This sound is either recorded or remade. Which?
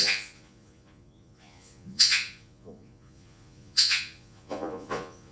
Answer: remade